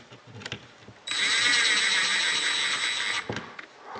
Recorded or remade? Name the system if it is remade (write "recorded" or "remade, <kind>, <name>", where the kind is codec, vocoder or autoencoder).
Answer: recorded